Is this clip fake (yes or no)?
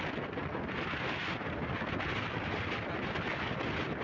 no